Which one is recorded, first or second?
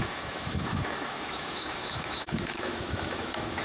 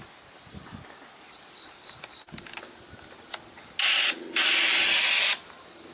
second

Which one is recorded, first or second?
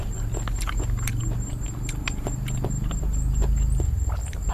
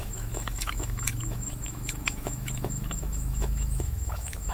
first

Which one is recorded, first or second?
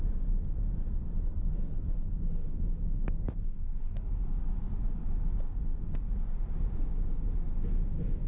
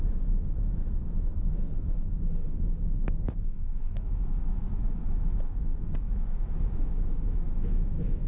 first